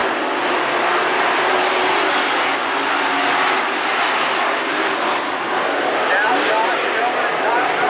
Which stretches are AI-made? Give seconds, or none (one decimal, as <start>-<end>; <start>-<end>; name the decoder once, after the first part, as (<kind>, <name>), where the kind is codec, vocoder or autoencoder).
none

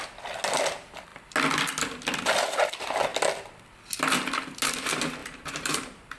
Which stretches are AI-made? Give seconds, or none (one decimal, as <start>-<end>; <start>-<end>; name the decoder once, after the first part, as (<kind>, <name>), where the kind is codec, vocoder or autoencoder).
5.2-6.2 (vocoder, BigVGAN v2)

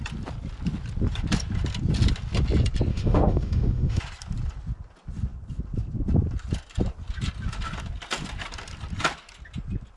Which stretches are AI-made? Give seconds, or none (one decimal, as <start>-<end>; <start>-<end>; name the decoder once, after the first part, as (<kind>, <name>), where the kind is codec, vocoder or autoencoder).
2.9-4.0 (autoencoder, DAC-VAE)

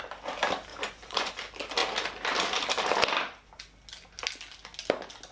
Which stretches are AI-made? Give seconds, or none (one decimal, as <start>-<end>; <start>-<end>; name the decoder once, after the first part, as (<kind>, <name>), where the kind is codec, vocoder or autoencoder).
0.7-1.3 (vocoder, Vocos)

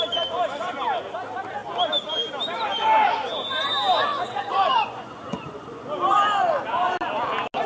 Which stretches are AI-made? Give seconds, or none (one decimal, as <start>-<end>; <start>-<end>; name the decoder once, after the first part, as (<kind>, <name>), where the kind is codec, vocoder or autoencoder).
4.1-5.9 (vocoder, Vocos)